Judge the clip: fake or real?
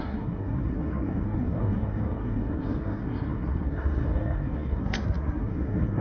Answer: fake